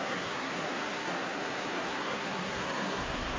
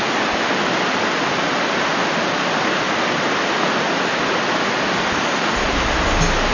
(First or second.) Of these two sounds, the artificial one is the first